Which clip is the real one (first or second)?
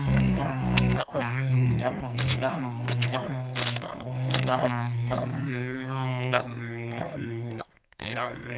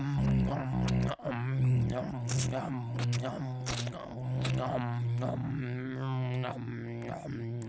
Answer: second